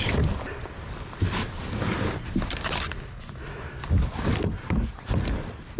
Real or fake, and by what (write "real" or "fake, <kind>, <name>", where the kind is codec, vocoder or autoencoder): real